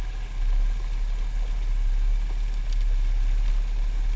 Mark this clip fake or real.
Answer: real